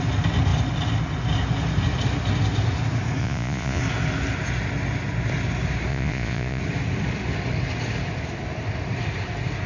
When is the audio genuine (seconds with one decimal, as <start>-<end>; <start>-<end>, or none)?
0.0-3.2; 3.8-5.9; 6.6-9.7